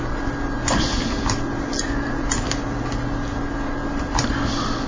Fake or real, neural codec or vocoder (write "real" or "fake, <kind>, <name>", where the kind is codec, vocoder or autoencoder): real